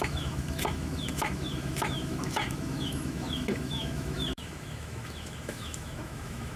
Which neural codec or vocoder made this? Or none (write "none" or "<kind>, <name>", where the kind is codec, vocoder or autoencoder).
autoencoder, DAC-VAE